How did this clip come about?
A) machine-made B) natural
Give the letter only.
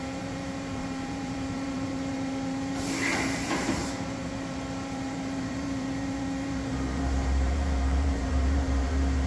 A